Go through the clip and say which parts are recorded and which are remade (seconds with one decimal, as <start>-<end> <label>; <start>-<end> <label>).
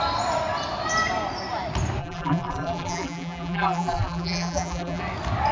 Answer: 0.0-2.0 recorded; 2.0-5.0 remade; 5.0-5.5 recorded